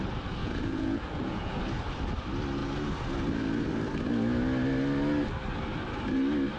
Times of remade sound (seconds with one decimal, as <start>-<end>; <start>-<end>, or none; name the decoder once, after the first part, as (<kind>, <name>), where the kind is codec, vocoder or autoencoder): 0.4-1.6 (vocoder, Vocos)